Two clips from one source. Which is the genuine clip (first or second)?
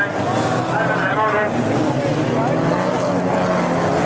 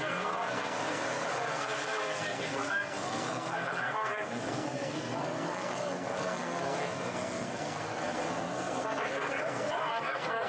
first